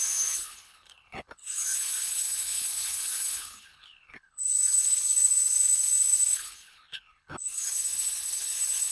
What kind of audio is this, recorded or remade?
remade